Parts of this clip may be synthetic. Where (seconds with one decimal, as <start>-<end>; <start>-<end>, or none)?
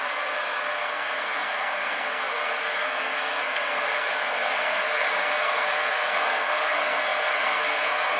0.0-8.2